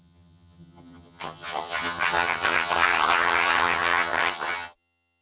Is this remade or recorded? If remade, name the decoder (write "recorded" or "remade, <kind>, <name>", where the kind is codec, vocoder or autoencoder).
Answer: remade, vocoder, HiFi-GAN